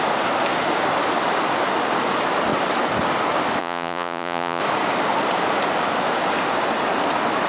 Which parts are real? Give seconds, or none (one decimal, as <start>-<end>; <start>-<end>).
0.0-3.6; 4.6-7.5